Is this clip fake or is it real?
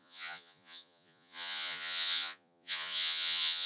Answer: fake